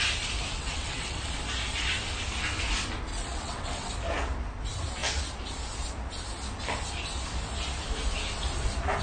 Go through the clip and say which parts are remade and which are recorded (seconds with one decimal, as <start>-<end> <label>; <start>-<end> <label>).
0.0-0.5 recorded; 0.5-1.3 remade; 1.3-3.1 recorded; 3.1-3.9 remade; 3.9-9.0 recorded